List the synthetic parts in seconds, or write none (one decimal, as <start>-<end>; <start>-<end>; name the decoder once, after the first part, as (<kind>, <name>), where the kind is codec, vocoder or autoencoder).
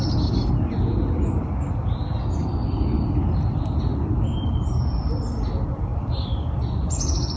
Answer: none